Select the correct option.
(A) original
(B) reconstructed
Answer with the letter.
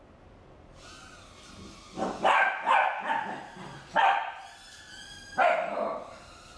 A